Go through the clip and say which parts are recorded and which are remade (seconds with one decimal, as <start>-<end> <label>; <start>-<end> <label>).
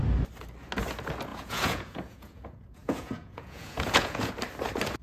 0.0-1.3 recorded; 1.3-4.3 remade; 4.3-5.0 recorded